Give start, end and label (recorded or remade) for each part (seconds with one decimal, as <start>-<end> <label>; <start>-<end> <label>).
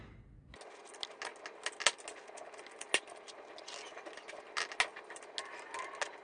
0.0-6.2 recorded